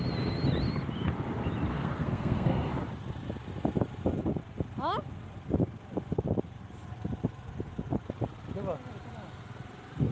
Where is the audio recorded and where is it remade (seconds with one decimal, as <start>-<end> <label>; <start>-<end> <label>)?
0.0-1.7 recorded; 1.7-2.7 remade; 2.7-10.1 recorded